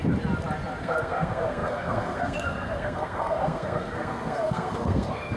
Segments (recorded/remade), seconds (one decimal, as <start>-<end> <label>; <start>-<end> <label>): 0.0-0.8 recorded; 0.8-5.4 remade